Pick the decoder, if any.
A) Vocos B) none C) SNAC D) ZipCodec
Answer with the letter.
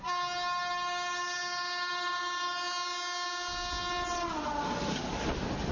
B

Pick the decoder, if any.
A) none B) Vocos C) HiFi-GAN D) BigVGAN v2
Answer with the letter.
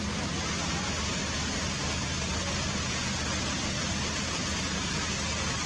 A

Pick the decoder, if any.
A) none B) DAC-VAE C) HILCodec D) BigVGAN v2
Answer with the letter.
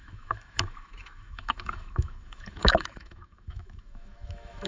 B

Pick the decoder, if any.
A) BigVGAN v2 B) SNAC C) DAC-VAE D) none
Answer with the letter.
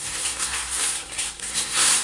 B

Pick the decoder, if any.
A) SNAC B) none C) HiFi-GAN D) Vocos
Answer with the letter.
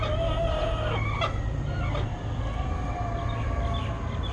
B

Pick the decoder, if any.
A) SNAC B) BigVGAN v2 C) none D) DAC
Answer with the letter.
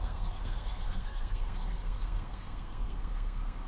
A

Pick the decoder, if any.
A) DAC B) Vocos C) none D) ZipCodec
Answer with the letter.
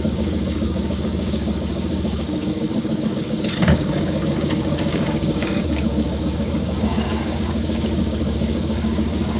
A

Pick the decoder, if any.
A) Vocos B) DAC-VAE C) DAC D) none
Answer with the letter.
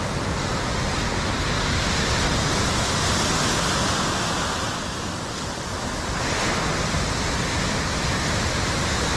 D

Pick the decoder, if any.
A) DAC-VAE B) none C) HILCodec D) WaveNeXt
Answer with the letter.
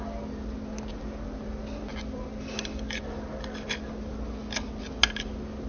B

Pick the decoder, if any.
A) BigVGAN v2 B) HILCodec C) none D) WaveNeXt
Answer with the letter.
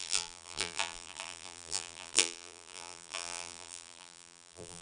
A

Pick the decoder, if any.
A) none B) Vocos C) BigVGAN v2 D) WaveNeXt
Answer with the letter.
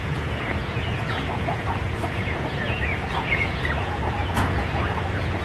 B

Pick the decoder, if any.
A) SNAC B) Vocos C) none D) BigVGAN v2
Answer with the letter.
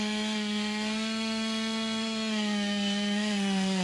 A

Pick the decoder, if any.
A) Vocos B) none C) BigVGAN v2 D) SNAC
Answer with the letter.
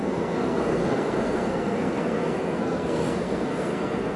D